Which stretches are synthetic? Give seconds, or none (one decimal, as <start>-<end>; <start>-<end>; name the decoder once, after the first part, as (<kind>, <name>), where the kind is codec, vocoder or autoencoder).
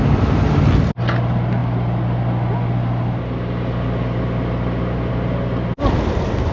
none